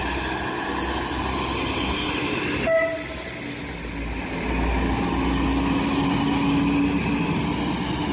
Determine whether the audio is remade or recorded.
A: recorded